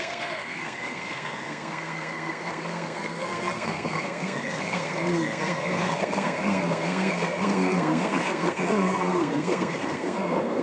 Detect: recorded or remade remade